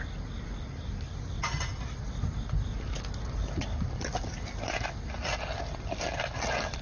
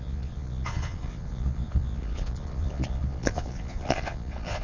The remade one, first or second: second